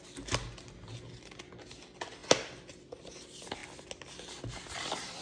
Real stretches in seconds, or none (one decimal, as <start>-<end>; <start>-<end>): 0.0-5.2